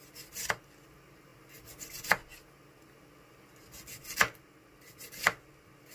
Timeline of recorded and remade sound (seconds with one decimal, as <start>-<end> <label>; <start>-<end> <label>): 0.0-5.9 recorded